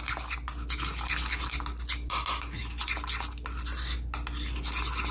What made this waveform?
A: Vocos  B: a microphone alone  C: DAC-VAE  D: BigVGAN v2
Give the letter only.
B